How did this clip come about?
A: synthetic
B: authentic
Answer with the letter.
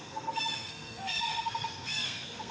A